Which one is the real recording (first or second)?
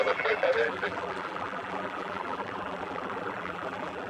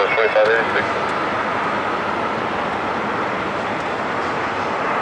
second